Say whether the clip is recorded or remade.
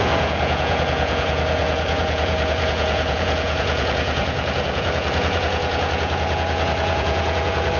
remade